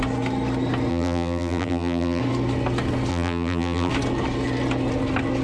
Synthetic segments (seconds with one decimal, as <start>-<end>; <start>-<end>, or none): 0.9-2.2; 3.1-3.9